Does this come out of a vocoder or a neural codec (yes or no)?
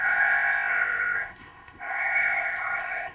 yes